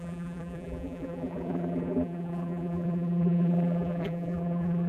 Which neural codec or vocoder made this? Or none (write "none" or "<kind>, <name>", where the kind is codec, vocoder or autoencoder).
vocoder, BigVGAN v2